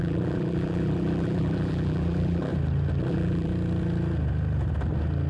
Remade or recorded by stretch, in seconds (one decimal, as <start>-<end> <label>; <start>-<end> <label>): 0.0-2.5 remade; 2.5-3.1 recorded; 3.1-3.5 remade; 3.5-5.3 recorded